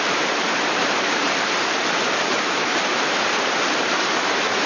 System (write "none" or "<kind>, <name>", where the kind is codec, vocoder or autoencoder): vocoder, BigVGAN v2